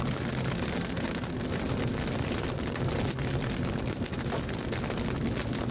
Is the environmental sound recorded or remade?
recorded